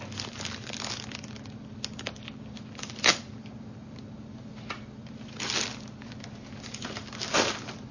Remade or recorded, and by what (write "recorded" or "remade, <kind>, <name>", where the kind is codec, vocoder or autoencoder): recorded